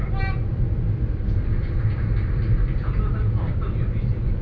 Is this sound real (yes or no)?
yes